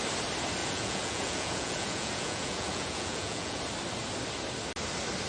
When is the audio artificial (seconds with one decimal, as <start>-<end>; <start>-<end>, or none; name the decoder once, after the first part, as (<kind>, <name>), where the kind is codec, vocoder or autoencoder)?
0.6-3.6 (vocoder, Vocos)